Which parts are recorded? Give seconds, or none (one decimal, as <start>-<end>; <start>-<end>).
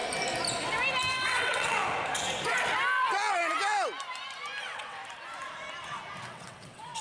0.0-1.1; 1.8-4.6; 5.0-6.2